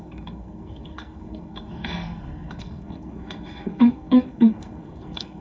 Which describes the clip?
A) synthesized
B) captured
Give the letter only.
A